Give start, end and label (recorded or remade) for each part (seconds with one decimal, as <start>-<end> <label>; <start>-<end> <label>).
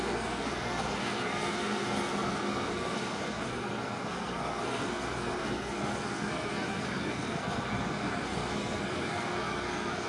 0.0-10.1 remade